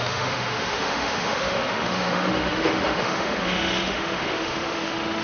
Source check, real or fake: fake